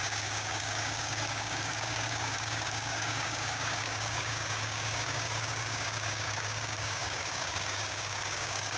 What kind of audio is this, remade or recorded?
remade